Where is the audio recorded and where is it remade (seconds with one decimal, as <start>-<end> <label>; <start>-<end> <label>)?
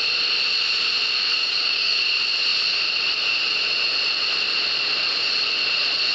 0.0-1.4 recorded; 1.4-2.0 remade; 2.0-6.1 recorded